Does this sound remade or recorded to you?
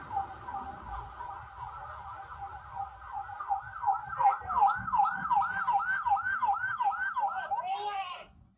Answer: recorded